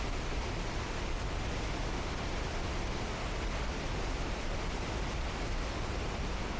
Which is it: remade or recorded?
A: recorded